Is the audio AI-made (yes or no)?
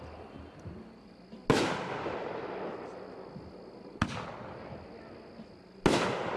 no